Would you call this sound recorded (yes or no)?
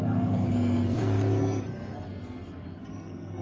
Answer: no